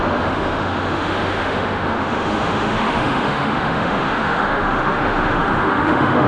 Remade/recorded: remade